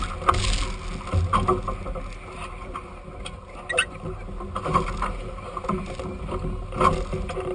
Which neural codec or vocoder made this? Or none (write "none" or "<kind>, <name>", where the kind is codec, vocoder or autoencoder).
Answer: none